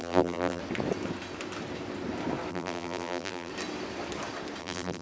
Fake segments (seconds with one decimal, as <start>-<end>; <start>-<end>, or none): 0.0-0.6; 2.5-3.5; 4.6-5.0